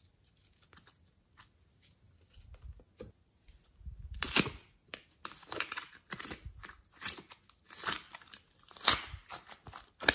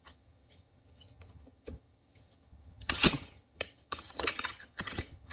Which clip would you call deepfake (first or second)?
second